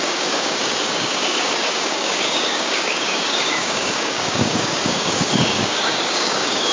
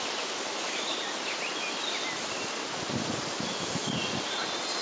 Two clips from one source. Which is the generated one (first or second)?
first